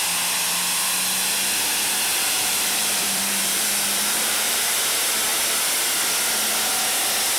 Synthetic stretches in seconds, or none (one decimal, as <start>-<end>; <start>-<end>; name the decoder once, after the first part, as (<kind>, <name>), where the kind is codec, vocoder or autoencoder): 2.1-4.8 (vocoder, BigVGAN v2)